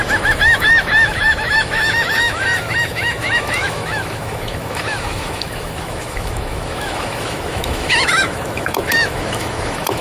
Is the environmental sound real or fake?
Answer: fake